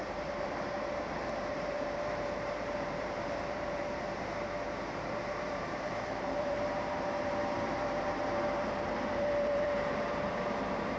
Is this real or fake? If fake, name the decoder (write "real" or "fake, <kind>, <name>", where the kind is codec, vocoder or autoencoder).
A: fake, vocoder, BigVGAN v2